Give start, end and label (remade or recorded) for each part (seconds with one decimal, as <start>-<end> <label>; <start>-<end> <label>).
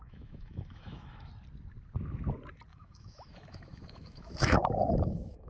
0.0-1.3 remade; 1.3-2.7 recorded; 2.7-5.5 remade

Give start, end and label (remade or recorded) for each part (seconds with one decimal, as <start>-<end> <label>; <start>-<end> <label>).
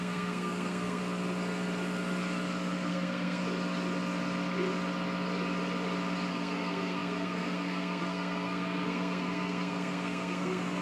0.0-1.0 remade; 1.0-2.9 recorded; 2.9-3.4 remade; 3.4-6.3 recorded; 6.3-10.8 remade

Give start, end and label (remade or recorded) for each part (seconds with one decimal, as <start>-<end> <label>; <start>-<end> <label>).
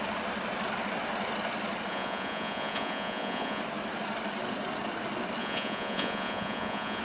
0.0-1.9 recorded; 1.9-3.6 remade; 3.6-5.4 recorded; 5.4-7.0 remade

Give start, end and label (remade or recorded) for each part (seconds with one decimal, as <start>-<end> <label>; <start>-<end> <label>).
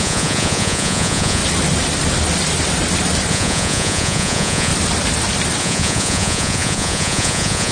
0.0-1.4 remade; 1.4-3.3 recorded; 3.3-4.7 remade; 4.7-5.6 recorded; 5.6-7.7 remade